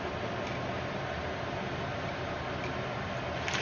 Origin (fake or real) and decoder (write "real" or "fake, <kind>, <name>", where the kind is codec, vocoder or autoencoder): real